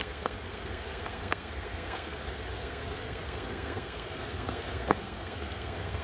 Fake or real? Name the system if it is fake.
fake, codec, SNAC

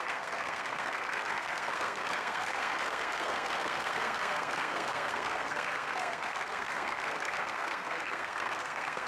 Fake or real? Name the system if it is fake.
fake, codec, SNAC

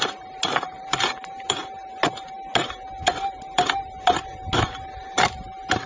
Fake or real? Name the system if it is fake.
real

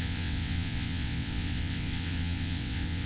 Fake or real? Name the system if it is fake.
fake, vocoder, WaveNeXt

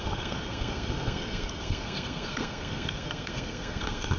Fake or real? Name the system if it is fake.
fake, codec, SNAC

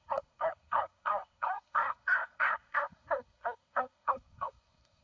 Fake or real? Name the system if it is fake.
fake, codec, SNAC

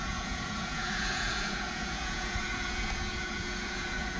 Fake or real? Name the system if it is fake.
fake, vocoder, Vocos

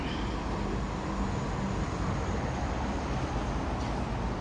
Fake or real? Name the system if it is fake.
real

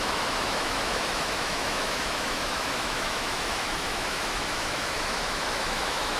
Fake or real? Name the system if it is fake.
fake, autoencoder, DAC-VAE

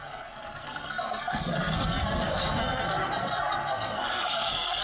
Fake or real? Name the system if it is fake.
fake, codec, SNAC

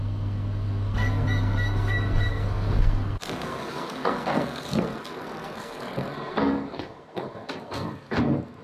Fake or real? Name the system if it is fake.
fake, codec, SNAC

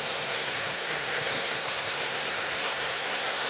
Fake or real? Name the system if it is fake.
fake, codec, SNAC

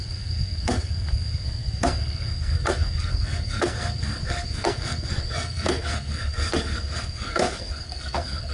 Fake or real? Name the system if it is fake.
fake, codec, SNAC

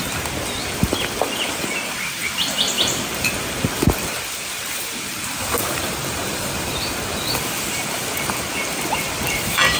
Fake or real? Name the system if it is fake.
fake, vocoder, BigVGAN v2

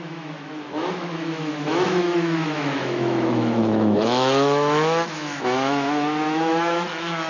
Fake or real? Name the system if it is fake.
fake, autoencoder, DAC-VAE